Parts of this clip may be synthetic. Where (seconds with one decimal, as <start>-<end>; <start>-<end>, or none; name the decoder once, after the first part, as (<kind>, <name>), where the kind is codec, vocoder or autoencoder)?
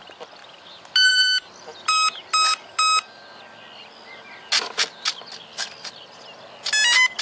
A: none